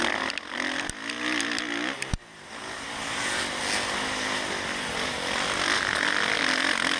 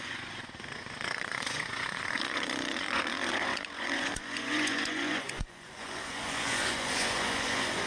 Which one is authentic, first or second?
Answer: first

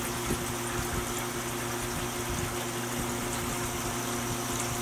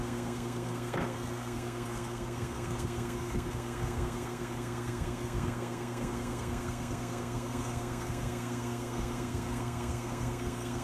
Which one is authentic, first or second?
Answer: first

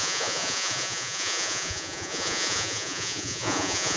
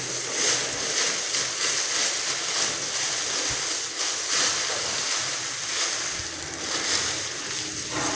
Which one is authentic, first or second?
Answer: second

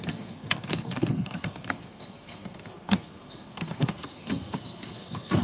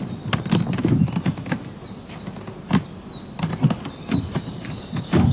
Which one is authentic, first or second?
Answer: second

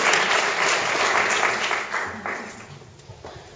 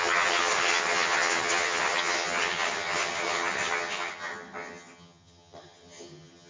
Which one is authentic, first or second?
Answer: first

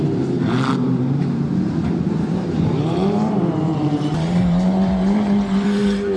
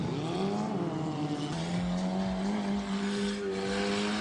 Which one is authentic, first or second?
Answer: second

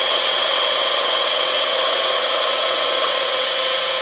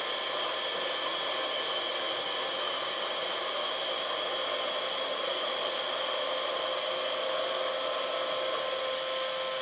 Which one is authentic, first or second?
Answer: second